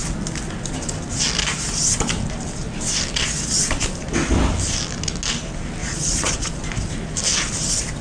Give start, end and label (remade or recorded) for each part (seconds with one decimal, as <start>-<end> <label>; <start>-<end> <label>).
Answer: 0.0-5.8 recorded; 5.8-6.5 remade; 6.5-8.0 recorded